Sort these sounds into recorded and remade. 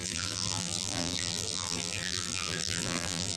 remade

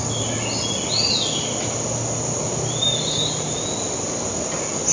recorded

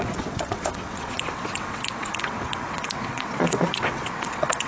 remade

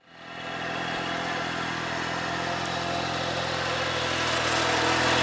recorded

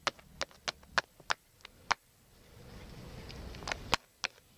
recorded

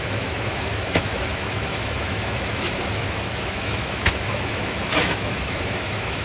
remade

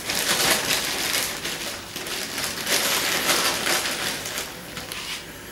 remade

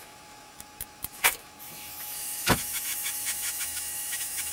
remade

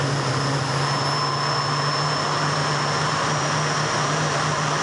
recorded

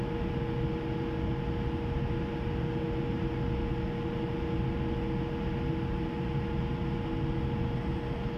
recorded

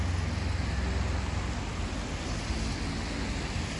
recorded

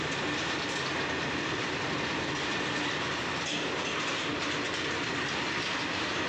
recorded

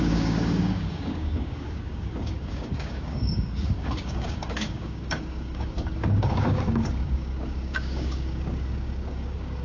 remade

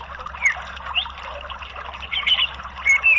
recorded